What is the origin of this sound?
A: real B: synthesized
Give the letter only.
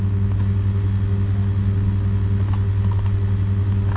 A